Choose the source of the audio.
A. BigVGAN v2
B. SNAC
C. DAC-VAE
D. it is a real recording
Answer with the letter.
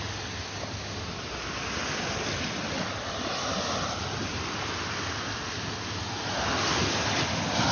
D